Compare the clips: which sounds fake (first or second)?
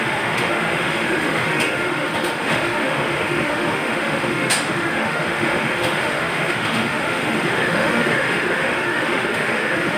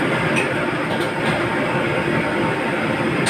first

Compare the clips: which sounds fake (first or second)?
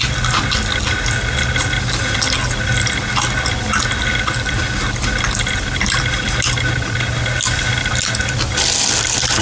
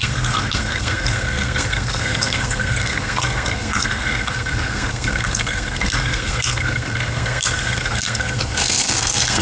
second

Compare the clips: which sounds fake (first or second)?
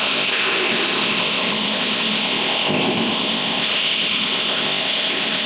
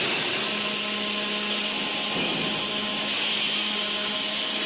first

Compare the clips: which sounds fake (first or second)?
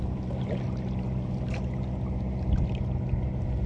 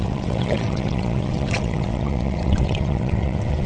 second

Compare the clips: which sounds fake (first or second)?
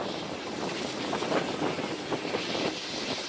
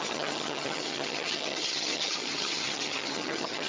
second